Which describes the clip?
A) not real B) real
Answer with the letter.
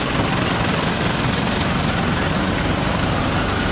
B